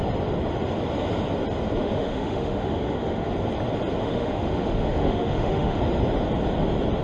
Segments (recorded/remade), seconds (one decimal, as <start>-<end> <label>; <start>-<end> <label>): 0.0-1.8 recorded; 1.8-3.3 remade; 3.3-4.0 recorded; 4.0-5.8 remade; 5.8-7.0 recorded